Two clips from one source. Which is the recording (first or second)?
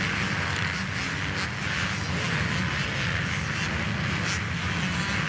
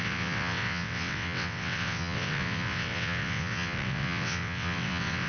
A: first